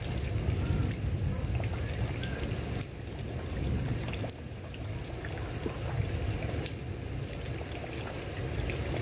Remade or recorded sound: recorded